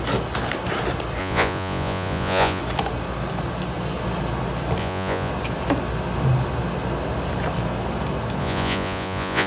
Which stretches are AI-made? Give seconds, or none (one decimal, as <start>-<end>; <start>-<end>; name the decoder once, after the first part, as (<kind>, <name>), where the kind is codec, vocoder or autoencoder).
1.2-2.6 (vocoder, Vocos); 4.8-5.3; 8.4-9.5